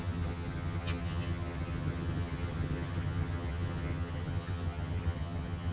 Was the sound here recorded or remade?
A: remade